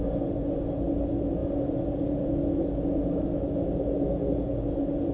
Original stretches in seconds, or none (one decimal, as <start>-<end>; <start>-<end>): 0.0-5.1